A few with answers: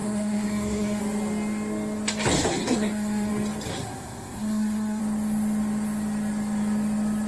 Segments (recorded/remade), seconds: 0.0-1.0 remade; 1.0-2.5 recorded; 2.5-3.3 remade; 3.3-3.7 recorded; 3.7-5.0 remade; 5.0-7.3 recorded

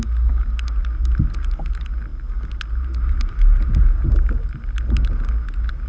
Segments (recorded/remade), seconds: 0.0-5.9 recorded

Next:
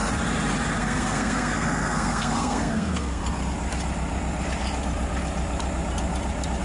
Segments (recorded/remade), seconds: 0.0-0.8 recorded; 0.8-3.2 remade; 3.2-6.6 recorded